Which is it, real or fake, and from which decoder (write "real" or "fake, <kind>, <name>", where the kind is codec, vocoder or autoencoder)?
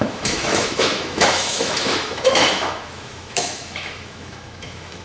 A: fake, autoencoder, DAC-VAE